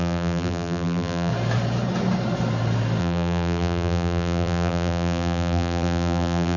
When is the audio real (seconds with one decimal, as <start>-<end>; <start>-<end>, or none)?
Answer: 1.3-3.0